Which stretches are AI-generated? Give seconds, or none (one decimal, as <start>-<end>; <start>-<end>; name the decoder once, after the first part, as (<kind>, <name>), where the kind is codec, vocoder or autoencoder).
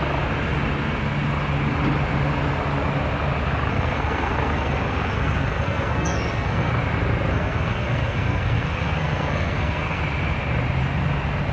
3.7-6.7 (codec, SNAC); 7.3-10.0